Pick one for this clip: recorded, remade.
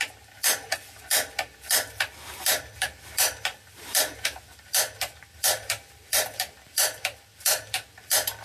remade